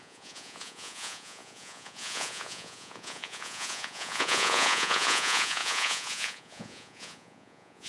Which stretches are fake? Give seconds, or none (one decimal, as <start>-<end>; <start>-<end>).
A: 0.0-7.9